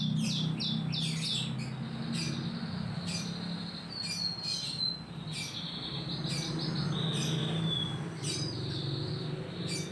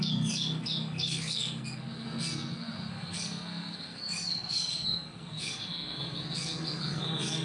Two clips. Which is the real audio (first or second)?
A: first